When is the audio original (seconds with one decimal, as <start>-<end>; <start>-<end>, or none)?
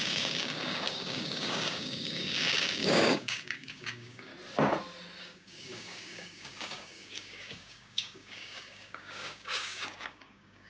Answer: 4.3-5.2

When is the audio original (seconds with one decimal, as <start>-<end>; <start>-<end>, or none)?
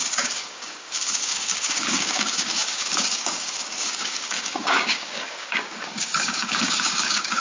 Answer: none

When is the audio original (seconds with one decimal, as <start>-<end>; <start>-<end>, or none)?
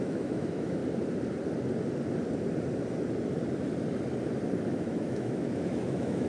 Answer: 0.8-4.6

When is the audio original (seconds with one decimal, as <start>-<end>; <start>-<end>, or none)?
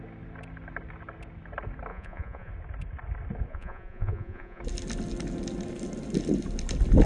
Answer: 0.0-1.9; 2.5-3.5; 4.6-7.1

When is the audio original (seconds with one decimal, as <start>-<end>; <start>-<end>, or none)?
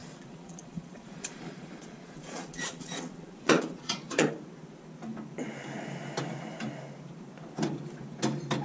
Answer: 4.4-8.6